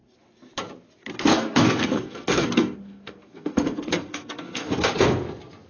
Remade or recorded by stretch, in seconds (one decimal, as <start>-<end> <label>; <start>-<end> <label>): 0.0-1.3 recorded; 1.3-4.7 remade; 4.7-5.7 recorded

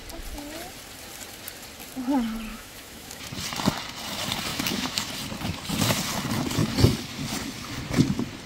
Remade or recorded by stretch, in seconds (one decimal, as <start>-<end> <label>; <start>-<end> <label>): 0.0-2.5 recorded; 2.5-3.2 remade; 3.2-4.5 recorded; 4.5-5.1 remade; 5.1-8.5 recorded